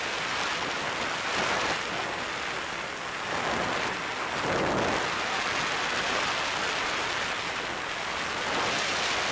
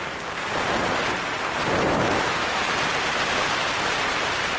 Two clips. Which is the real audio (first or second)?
first